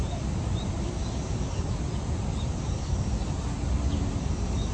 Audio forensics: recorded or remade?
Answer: recorded